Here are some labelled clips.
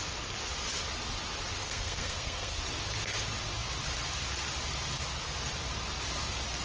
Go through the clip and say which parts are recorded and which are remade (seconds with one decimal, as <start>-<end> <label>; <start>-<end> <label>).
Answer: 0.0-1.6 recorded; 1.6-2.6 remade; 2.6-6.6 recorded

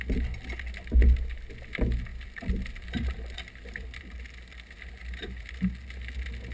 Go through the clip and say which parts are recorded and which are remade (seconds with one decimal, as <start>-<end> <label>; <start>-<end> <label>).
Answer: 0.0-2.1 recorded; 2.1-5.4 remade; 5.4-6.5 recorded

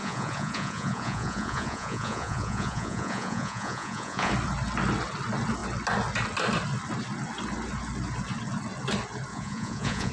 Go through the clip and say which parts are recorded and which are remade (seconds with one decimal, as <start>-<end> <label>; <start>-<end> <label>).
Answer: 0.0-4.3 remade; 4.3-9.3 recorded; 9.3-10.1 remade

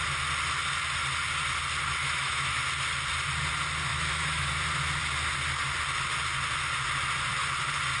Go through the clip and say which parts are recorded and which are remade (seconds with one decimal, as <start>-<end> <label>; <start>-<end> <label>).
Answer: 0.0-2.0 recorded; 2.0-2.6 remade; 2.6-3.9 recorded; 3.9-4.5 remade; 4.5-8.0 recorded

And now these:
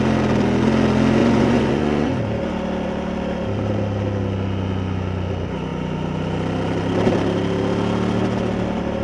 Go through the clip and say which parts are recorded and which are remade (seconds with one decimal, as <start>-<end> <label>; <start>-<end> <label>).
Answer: 0.0-1.2 recorded; 1.2-2.2 remade; 2.2-9.0 recorded

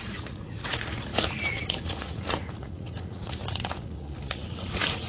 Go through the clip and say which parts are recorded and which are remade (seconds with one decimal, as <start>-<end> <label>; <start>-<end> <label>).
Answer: 0.0-5.1 remade

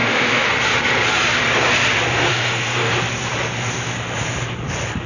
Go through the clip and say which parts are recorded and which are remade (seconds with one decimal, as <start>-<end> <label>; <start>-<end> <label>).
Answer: 0.0-0.5 remade; 0.5-2.3 recorded; 2.3-2.9 remade; 2.9-5.1 recorded